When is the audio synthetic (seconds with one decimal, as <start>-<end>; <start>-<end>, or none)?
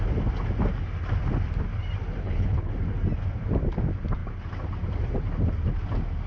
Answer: 2.2-2.7